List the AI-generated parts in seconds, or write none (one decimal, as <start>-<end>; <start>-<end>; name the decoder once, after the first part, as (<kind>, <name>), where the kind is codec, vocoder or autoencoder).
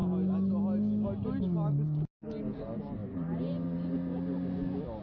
none